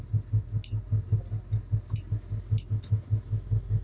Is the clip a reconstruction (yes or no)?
no